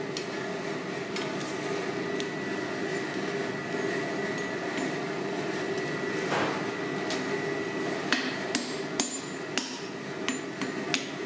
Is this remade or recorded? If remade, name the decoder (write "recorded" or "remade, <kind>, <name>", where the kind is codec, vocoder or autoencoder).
recorded